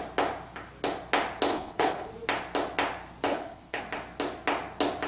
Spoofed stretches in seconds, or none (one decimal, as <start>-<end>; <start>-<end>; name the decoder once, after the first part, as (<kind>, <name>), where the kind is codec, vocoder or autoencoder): 1.5-2.1 (codec, HILCodec); 3.3-3.8